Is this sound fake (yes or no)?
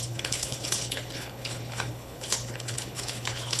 yes